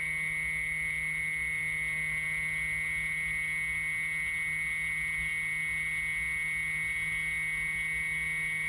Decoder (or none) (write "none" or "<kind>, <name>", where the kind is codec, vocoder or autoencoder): none